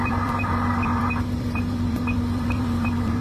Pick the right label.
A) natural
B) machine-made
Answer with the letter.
B